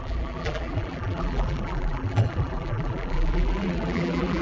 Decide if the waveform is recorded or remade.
remade